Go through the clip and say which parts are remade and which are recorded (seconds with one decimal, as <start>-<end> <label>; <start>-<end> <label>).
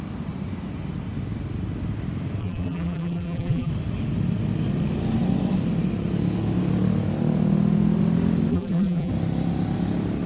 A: 0.0-2.4 recorded; 2.4-3.7 remade; 3.7-8.5 recorded; 8.5-9.1 remade; 9.1-10.3 recorded